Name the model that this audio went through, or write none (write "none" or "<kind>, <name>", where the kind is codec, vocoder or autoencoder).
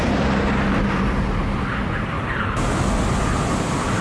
none